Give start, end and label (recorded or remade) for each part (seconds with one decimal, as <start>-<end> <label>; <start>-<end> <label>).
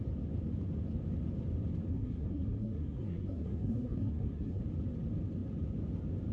0.0-1.9 recorded; 1.9-4.6 remade; 4.6-6.3 recorded